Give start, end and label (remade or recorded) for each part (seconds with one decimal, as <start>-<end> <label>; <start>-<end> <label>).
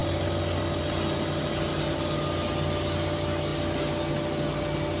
0.0-5.0 recorded